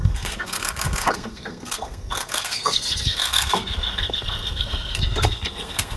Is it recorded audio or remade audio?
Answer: remade